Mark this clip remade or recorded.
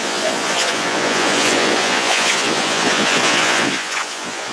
remade